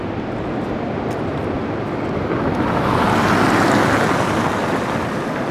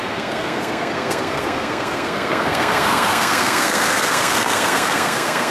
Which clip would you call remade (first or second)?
second